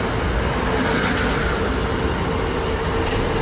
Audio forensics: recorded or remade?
recorded